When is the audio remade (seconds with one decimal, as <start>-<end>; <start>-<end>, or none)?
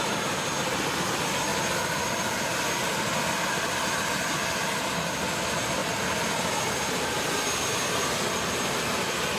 none